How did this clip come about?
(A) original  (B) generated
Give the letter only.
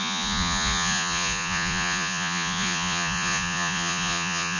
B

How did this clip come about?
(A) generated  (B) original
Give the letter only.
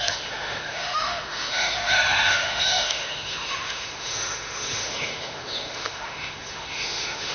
A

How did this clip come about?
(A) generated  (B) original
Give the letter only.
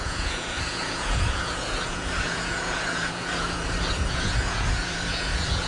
A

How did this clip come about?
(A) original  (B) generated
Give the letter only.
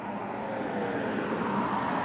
A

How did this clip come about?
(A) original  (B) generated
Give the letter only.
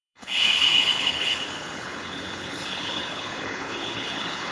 B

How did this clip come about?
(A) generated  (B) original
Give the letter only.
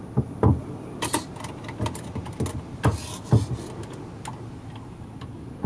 B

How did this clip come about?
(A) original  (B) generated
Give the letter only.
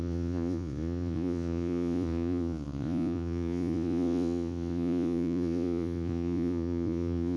B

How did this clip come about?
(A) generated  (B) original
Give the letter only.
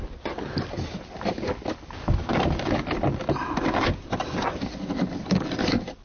B